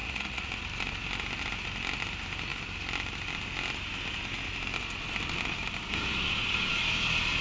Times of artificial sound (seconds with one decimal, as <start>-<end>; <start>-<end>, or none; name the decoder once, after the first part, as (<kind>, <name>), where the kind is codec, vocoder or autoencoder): 0.0-0.5 (vocoder, Vocos)